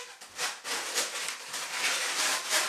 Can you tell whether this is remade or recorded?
recorded